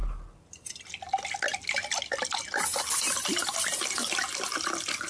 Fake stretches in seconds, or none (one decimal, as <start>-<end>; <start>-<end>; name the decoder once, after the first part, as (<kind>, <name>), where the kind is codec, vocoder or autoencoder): none